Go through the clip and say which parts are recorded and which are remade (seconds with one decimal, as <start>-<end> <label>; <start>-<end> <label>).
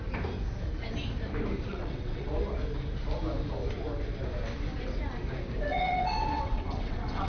0.0-1.7 recorded; 1.7-2.3 remade; 2.3-5.7 recorded; 5.7-7.3 remade